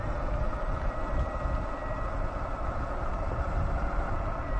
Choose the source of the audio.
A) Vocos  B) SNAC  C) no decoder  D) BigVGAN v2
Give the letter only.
C